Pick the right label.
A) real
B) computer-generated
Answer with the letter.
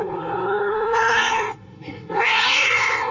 B